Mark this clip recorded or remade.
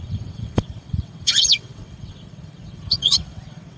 remade